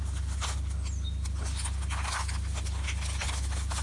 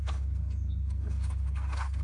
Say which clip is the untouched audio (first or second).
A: first